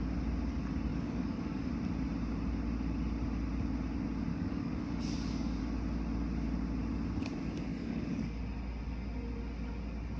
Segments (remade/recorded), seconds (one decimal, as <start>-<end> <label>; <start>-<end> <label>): 0.0-0.9 recorded; 0.9-1.7 remade; 1.7-4.3 recorded; 4.3-5.6 remade; 5.6-7.7 recorded; 7.7-8.4 remade; 8.4-10.2 recorded